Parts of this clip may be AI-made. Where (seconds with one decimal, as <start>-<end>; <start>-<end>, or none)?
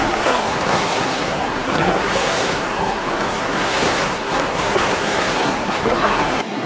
0.0-6.7